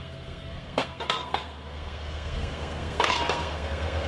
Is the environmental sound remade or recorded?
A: remade